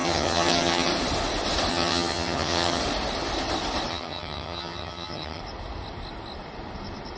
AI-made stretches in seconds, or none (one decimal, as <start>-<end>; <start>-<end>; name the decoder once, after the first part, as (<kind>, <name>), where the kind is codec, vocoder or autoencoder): 0.0-0.9 (vocoder, HiFi-GAN); 1.7-2.8; 3.9-5.4